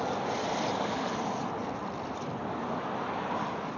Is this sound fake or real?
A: real